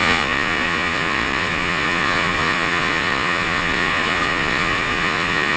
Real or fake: fake